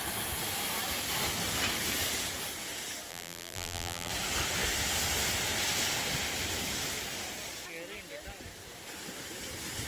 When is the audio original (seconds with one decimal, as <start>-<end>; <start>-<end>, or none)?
0.0-3.1; 4.1-9.9